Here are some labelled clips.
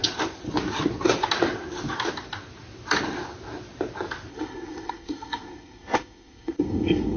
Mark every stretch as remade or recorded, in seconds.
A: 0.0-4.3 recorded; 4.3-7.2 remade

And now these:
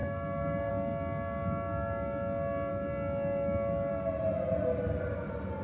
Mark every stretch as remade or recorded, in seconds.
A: 0.0-0.7 remade; 0.7-5.6 recorded

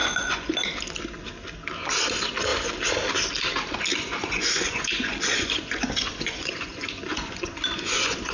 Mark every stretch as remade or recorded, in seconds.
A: 0.0-0.5 remade; 0.5-3.9 recorded; 3.9-8.3 remade

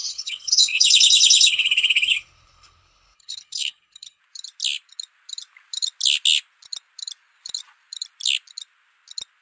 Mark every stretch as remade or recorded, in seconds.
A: 0.0-4.2 remade; 4.2-9.4 recorded

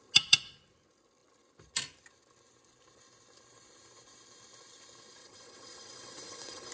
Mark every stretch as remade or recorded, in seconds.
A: 0.0-5.2 recorded; 5.2-6.7 remade

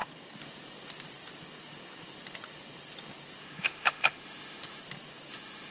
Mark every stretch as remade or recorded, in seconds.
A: 0.0-3.4 recorded; 3.4-4.8 remade; 4.8-5.3 recorded; 5.3-5.7 remade